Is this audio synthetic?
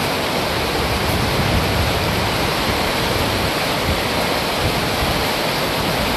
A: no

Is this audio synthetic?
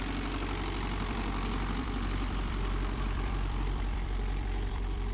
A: yes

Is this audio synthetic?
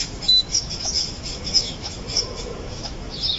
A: yes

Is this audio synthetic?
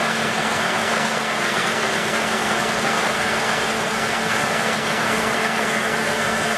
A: yes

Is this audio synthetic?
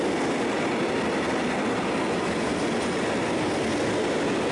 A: no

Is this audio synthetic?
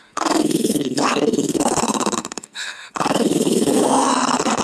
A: yes